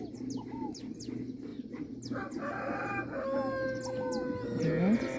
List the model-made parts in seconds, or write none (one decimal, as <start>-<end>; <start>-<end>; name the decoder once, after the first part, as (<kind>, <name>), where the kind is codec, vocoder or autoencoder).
none